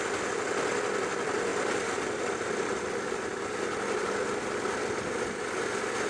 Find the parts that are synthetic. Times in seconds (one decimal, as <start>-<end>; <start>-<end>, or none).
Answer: none